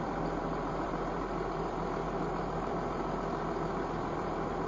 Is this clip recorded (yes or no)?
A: no